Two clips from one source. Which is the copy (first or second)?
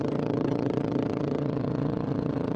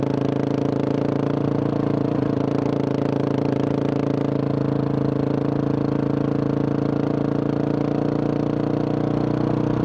first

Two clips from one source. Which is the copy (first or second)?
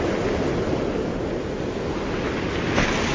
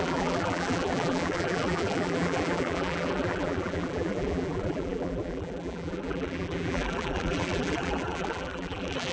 second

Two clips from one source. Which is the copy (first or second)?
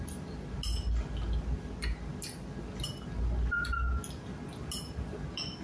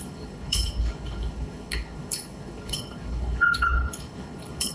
second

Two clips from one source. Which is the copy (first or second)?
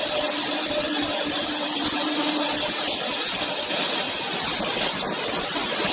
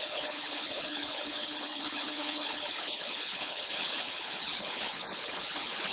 second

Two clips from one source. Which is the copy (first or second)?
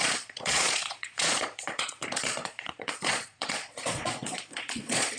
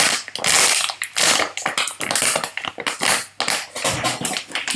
first